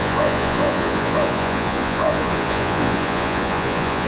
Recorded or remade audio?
remade